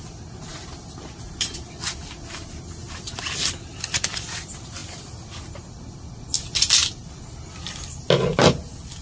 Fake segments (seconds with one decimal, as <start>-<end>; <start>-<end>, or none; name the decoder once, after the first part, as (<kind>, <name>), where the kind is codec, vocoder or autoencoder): none